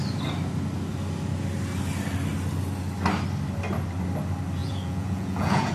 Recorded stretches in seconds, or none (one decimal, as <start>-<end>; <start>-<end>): 0.0-4.6